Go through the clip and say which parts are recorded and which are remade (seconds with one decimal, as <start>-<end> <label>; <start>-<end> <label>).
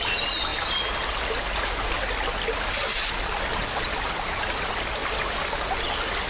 0.0-6.3 recorded